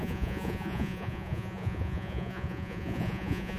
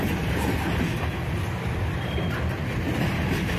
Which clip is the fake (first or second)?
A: first